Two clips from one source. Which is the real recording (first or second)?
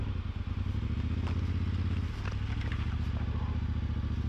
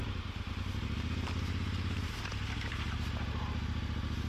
first